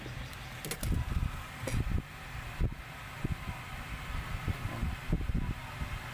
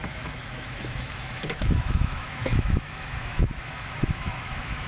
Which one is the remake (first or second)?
second